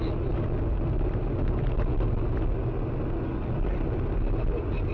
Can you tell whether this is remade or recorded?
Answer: recorded